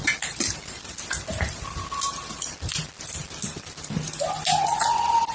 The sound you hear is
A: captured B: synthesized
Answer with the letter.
A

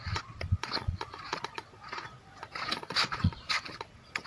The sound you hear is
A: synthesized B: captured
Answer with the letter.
A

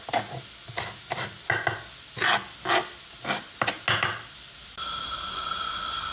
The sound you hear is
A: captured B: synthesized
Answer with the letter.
A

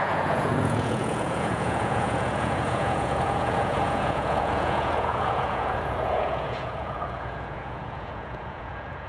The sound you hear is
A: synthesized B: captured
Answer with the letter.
A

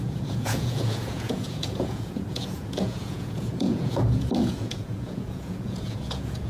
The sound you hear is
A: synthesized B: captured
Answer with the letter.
A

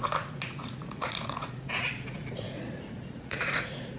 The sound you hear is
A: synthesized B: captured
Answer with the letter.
A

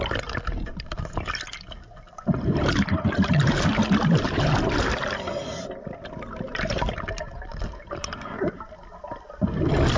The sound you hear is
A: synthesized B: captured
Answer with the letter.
B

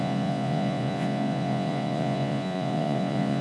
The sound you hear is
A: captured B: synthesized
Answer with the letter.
B